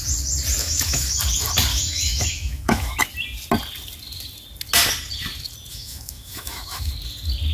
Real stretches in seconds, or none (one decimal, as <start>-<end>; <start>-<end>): 0.0-0.6; 1.2-1.7; 3.0-5.7; 6.9-7.5